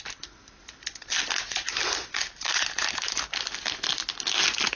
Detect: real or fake real